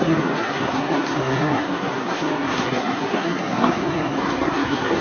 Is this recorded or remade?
remade